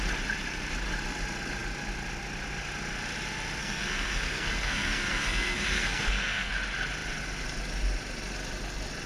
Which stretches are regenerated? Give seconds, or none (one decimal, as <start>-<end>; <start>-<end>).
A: 3.6-6.5

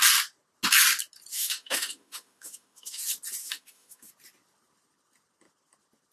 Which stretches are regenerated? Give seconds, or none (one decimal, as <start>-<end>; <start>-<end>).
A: 1.3-3.0; 3.4-4.1

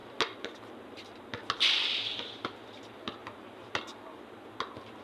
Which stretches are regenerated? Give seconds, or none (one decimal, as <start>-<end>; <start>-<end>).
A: none

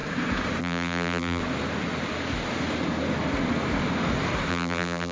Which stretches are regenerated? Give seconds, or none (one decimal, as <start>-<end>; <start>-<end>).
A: 0.6-1.4; 4.5-5.1

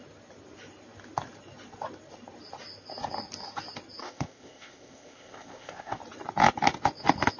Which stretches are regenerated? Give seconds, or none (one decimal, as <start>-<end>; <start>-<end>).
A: 4.0-6.0

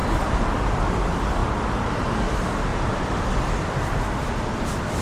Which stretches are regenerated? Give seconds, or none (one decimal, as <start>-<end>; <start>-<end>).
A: 0.0-0.5; 2.7-3.5